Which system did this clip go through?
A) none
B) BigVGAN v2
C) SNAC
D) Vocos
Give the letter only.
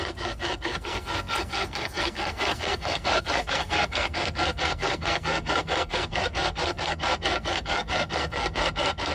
C